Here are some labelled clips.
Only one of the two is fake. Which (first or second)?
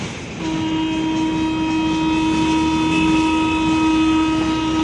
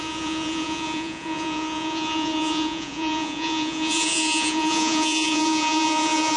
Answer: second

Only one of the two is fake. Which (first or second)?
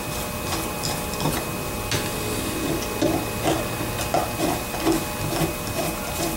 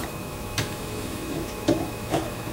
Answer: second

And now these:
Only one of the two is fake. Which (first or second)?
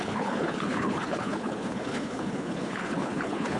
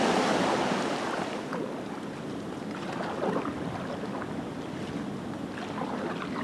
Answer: first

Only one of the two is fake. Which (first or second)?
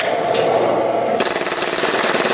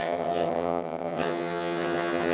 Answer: second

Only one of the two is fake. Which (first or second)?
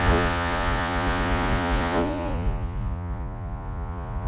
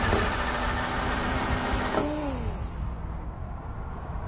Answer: first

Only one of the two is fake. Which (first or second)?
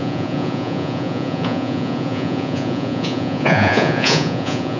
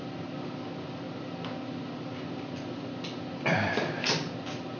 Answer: first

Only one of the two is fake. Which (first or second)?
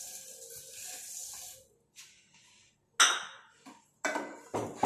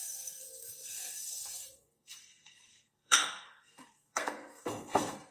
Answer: second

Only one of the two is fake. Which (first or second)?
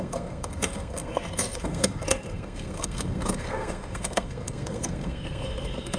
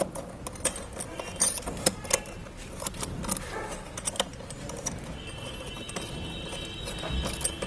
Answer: first